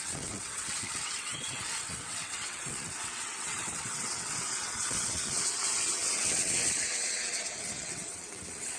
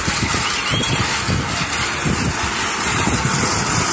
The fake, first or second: first